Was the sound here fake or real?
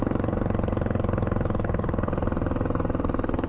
real